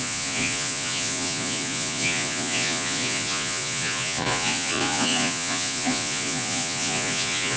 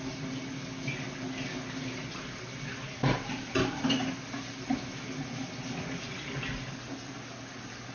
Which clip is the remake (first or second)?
first